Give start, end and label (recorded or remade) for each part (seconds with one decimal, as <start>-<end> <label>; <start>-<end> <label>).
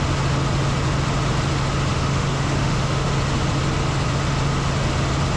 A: 0.0-1.9 recorded; 1.9-3.1 remade; 3.1-5.4 recorded